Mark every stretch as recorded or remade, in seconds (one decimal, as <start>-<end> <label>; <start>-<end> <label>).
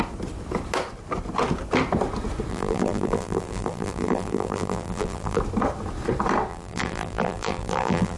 0.0-2.5 recorded; 2.5-5.4 remade; 5.4-6.5 recorded; 6.5-8.2 remade